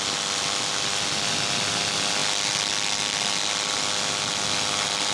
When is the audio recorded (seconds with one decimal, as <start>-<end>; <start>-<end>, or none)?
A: 0.0-5.1